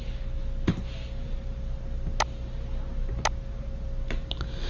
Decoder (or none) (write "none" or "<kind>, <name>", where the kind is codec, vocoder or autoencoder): none